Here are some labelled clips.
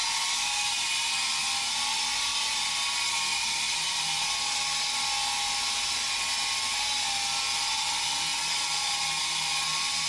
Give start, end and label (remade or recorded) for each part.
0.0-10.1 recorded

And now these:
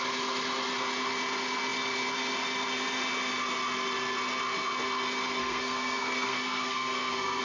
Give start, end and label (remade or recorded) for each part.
0.0-5.4 recorded; 5.4-7.4 remade

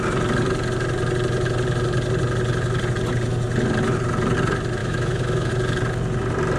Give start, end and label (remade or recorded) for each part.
0.0-4.8 recorded; 4.8-5.5 remade; 5.5-6.6 recorded

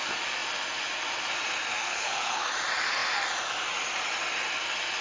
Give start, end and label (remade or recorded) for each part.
0.0-1.8 recorded; 1.8-2.5 remade; 2.5-5.0 recorded

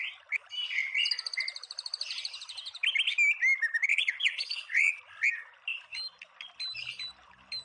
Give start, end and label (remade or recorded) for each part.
0.0-3.9 recorded; 3.9-5.0 remade; 5.0-7.6 recorded

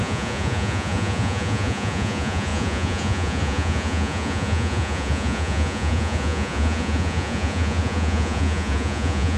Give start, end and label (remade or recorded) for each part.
0.0-9.4 remade

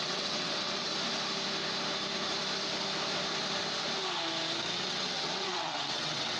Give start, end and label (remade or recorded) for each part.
0.0-0.9 remade; 0.9-4.7 recorded; 4.7-6.4 remade

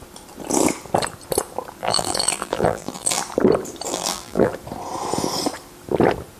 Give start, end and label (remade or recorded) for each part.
0.0-1.8 recorded; 1.8-3.2 remade; 3.2-3.9 recorded; 3.9-4.5 remade; 4.5-6.4 recorded